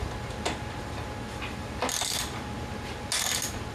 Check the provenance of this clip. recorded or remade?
recorded